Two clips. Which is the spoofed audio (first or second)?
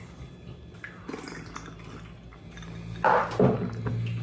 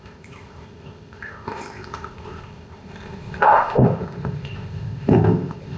second